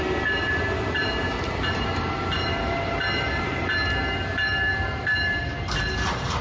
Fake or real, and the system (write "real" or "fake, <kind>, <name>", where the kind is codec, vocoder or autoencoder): real